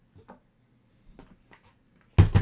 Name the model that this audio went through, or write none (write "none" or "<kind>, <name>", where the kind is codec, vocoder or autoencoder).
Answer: none